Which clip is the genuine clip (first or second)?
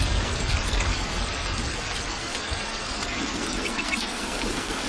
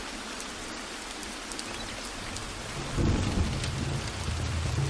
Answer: second